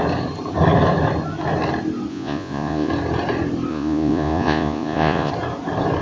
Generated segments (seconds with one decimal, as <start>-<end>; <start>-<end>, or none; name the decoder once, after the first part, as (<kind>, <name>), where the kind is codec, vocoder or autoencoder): 2.1-2.9 (vocoder, Vocos); 3.7-5.3